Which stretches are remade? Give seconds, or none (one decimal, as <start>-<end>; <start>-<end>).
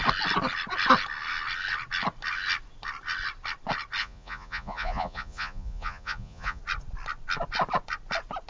4.0-6.6